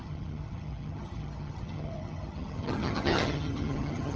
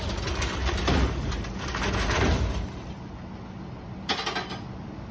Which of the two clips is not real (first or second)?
first